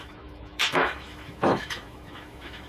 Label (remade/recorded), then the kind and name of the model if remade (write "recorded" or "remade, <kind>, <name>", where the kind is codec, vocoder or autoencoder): remade, autoencoder, DAC-VAE